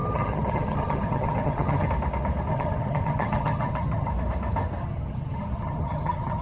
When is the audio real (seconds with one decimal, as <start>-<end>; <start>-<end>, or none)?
1.9-2.5; 4.1-4.8